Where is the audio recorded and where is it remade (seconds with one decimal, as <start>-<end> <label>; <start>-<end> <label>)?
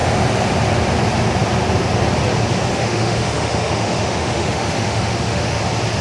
0.0-2.7 recorded; 2.7-5.6 remade; 5.6-6.0 recorded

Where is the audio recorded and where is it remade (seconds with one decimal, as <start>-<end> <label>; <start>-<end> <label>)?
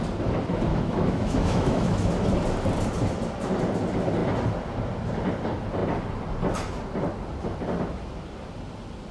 0.0-0.7 recorded; 0.7-2.1 remade; 2.1-9.1 recorded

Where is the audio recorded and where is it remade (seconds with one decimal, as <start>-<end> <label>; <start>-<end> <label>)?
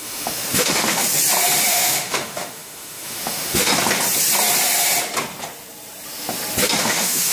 0.0-1.0 remade; 1.0-1.7 recorded; 1.7-3.7 remade; 3.7-6.8 recorded; 6.8-7.3 remade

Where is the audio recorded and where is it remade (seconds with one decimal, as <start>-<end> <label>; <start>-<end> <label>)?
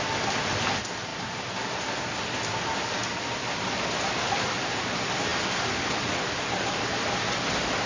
0.0-7.9 recorded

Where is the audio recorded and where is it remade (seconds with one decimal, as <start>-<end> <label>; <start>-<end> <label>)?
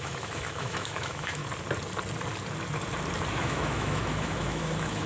0.0-1.4 remade; 1.4-3.3 recorded; 3.3-5.1 remade